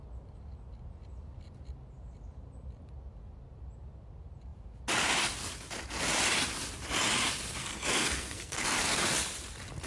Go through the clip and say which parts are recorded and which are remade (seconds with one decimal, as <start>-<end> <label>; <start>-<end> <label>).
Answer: 0.0-7.6 recorded; 7.6-9.0 remade; 9.0-9.9 recorded